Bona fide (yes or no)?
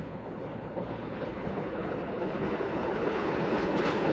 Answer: no